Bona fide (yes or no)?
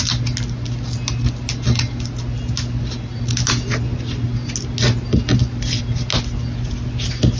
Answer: yes